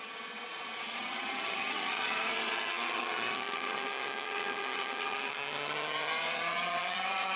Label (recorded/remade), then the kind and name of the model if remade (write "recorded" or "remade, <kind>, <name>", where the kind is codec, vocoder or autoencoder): remade, vocoder, HiFi-GAN